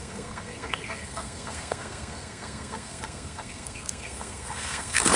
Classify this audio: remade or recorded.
remade